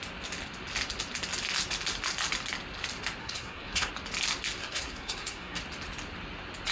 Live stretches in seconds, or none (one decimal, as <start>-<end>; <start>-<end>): 0.0-3.2; 3.9-4.6; 5.6-6.7